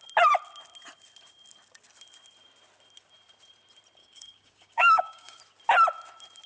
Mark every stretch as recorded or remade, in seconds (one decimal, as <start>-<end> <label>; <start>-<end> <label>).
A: 0.0-4.0 recorded; 4.0-5.4 remade; 5.4-6.5 recorded